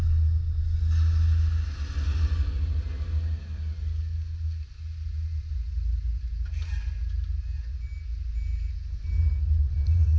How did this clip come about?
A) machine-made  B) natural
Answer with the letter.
B